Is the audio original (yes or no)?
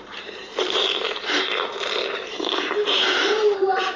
no